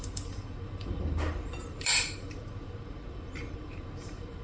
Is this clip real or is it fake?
fake